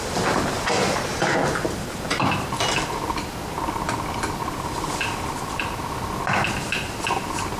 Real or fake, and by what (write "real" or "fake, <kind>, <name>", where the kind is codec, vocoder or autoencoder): real